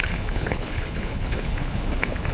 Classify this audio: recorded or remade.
remade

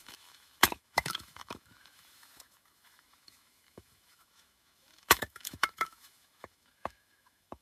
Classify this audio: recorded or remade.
remade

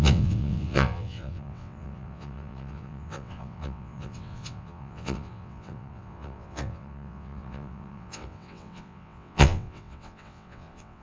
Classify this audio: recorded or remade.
remade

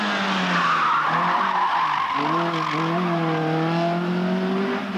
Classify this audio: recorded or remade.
recorded